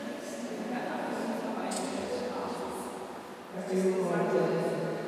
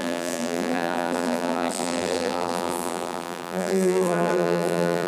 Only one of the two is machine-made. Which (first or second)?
second